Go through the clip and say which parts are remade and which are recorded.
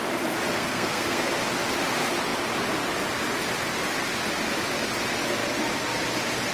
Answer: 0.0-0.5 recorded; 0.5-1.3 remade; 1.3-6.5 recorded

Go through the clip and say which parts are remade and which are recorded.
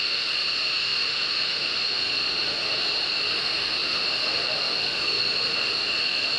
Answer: 0.0-2.8 remade; 2.8-3.4 recorded; 3.4-6.4 remade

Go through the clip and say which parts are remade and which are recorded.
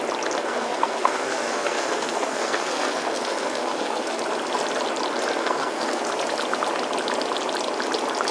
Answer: 0.0-0.4 recorded; 0.4-4.2 remade; 4.2-5.4 recorded; 5.4-6.0 remade; 6.0-8.3 recorded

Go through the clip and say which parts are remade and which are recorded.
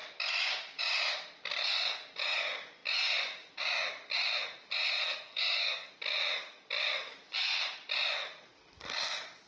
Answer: 0.0-5.0 recorded; 5.0-5.9 remade; 5.9-9.5 recorded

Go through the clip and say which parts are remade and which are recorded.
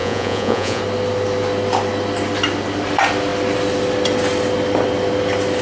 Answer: 0.0-0.8 remade; 0.8-5.6 recorded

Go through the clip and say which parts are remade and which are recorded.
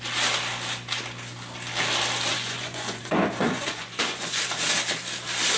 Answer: 0.0-2.3 recorded; 2.3-4.4 remade; 4.4-5.6 recorded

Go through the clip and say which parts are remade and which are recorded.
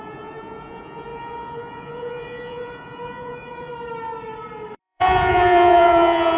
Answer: 0.0-3.7 remade; 3.7-4.8 recorded; 4.8-6.4 remade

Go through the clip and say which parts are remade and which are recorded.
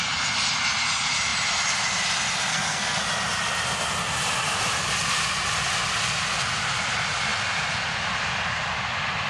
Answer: 0.0-2.5 recorded; 2.5-3.0 remade; 3.0-9.3 recorded